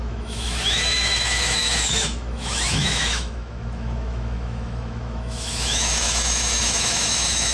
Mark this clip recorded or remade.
remade